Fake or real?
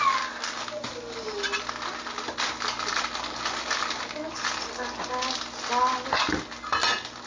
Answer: real